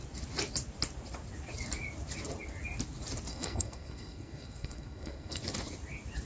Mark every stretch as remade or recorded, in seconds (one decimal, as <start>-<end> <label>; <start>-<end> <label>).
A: 0.0-3.3 recorded; 3.3-5.4 remade; 5.4-6.3 recorded